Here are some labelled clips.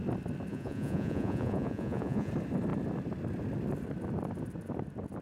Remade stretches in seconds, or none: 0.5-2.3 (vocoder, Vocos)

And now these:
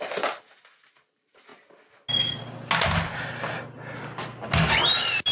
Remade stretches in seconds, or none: none

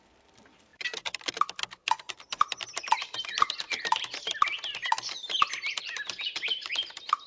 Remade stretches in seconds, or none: none

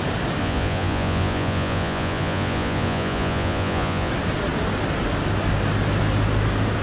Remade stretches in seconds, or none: 0.4-4.1 (vocoder, Vocos)

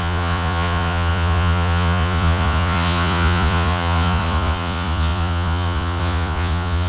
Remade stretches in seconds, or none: 0.0-6.9 (vocoder, Vocos)